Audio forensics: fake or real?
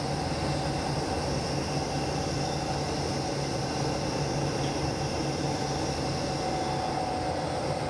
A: real